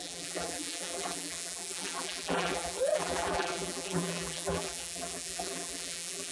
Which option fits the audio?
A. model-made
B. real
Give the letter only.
A